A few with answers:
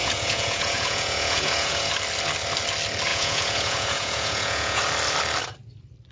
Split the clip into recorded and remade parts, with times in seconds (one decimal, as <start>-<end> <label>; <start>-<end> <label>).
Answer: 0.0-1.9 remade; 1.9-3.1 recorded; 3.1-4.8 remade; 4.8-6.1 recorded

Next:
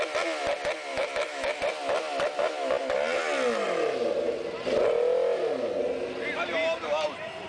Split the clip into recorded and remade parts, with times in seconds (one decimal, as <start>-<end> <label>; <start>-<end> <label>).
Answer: 0.0-0.9 recorded; 0.9-1.6 remade; 1.6-7.5 recorded

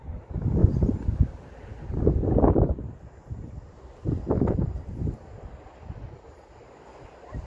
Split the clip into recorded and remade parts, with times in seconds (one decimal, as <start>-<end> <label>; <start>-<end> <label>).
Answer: 0.0-7.5 recorded